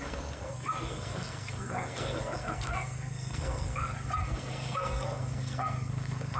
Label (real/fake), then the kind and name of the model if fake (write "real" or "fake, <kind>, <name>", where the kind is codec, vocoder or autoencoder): fake, codec, SNAC